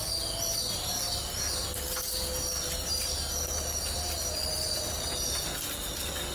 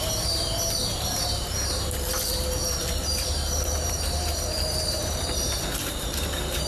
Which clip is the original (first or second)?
first